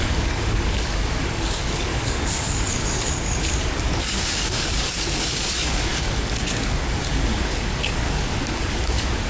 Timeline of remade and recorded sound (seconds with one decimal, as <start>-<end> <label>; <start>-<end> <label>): 0.0-9.3 remade